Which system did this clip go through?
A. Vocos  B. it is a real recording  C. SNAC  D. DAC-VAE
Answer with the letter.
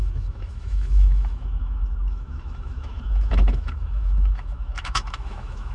D